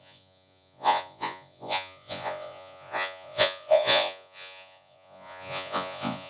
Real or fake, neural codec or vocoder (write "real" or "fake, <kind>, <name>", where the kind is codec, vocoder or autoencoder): fake, vocoder, Vocos